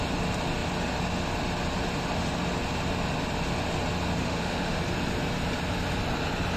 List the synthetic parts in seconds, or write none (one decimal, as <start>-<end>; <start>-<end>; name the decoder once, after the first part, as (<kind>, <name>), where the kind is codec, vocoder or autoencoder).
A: 4.2-4.8 (autoencoder, DAC-VAE)